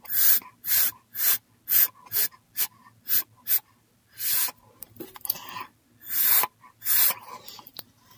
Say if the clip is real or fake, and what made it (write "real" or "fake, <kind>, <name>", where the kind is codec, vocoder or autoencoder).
real